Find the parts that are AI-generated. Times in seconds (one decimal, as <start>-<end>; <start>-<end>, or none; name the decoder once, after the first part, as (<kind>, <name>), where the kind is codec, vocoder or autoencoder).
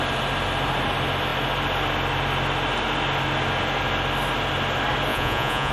5.1-5.7 (vocoder, Vocos)